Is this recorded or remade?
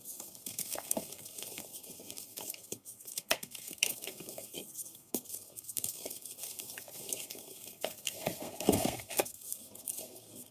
remade